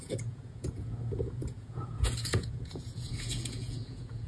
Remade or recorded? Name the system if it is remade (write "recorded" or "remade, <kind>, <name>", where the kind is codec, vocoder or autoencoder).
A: remade, vocoder, Vocos